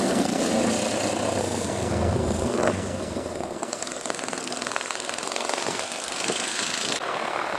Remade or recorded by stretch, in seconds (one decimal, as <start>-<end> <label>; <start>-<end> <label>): 0.0-0.5 remade; 0.5-1.4 recorded; 1.4-7.6 remade